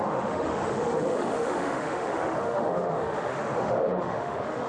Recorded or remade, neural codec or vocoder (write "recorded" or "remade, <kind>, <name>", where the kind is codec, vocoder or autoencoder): remade, autoencoder, DAC-VAE